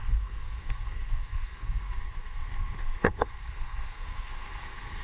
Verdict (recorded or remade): remade